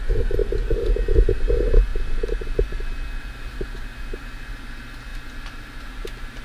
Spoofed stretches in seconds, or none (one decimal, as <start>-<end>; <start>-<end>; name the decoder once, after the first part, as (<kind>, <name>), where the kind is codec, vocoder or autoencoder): none